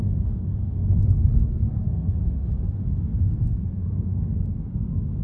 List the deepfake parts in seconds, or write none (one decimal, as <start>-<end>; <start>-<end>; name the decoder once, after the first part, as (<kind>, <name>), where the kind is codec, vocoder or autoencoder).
0.0-5.2 (codec, SNAC)